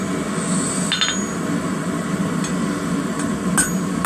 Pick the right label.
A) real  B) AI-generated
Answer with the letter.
A